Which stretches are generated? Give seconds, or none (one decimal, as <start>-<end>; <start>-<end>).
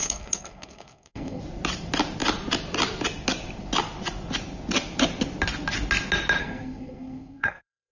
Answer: 0.0-1.4; 6.4-7.9